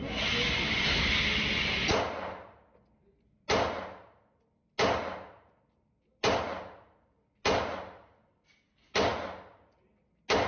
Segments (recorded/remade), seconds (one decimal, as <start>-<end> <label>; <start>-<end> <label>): 0.0-10.5 recorded